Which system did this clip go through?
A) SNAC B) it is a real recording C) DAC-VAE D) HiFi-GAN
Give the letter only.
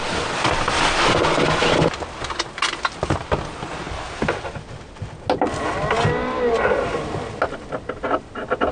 B